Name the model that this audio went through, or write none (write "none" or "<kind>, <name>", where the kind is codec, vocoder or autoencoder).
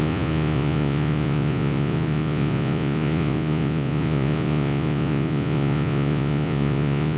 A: vocoder, Vocos